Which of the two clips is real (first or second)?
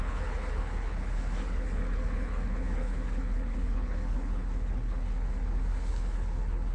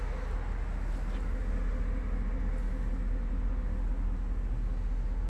second